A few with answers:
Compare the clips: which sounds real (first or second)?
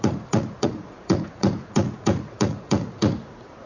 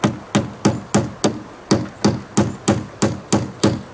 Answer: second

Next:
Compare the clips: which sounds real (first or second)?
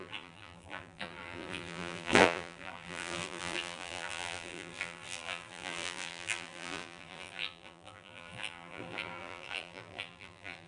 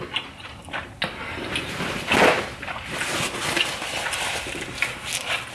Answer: second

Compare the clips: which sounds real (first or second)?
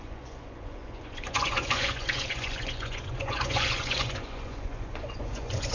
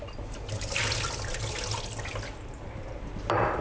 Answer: second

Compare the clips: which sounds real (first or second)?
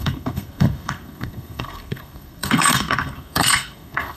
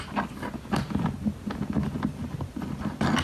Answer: second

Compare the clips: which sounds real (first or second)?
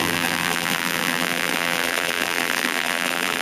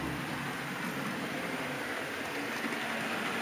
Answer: second